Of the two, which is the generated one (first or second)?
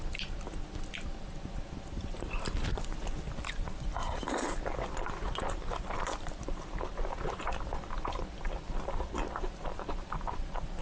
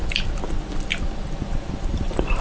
second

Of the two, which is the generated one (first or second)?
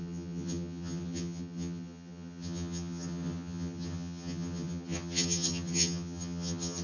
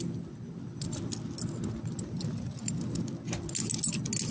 first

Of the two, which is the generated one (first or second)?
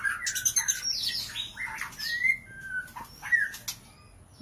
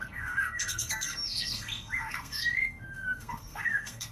second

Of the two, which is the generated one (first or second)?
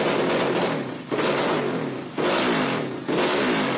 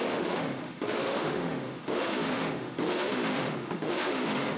second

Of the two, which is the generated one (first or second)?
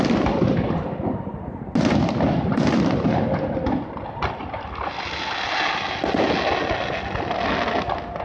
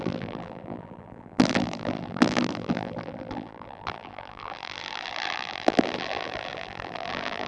second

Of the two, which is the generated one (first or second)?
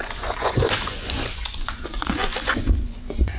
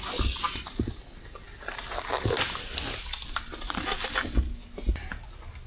first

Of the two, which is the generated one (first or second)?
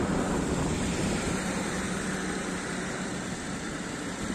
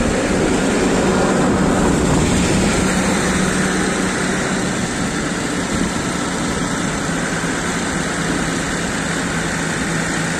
first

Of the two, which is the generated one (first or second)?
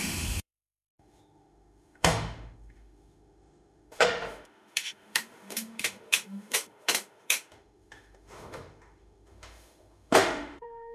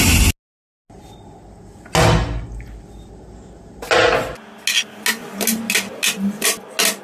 first